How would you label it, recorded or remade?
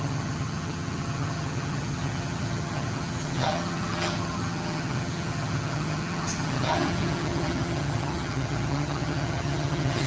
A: remade